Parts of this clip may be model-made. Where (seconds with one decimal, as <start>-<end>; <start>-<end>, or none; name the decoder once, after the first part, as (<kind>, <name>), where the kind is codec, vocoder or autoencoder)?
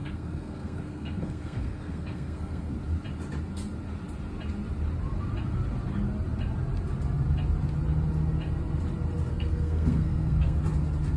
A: 0.0-2.7 (codec, SNAC); 9.3-10.6